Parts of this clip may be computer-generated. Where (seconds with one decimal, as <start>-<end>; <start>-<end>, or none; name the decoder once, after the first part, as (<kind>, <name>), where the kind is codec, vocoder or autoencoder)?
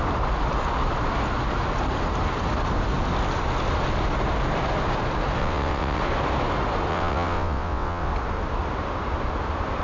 5.4-6.0 (vocoder, WaveNeXt); 6.9-8.1